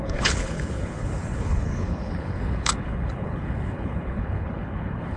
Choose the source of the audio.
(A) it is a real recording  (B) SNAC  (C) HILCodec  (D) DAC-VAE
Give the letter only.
C